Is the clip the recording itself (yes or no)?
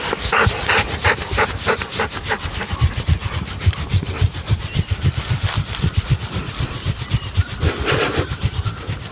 yes